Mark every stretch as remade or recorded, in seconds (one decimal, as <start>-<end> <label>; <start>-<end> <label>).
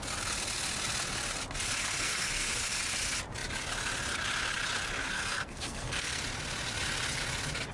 0.0-1.8 recorded; 1.8-2.8 remade; 2.8-5.0 recorded; 5.0-6.2 remade; 6.2-7.7 recorded